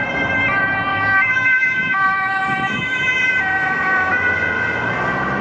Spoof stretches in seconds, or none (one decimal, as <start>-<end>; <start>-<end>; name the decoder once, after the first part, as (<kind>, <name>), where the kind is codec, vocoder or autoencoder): 0.9-4.1 (autoencoder, DAC-VAE)